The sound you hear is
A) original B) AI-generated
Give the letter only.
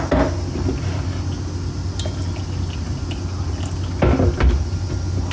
A